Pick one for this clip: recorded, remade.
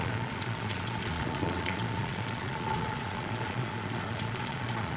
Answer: remade